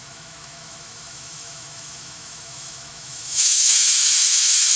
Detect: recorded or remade remade